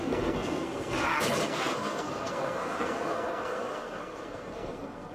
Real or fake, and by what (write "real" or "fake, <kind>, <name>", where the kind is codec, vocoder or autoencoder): fake, codec, SNAC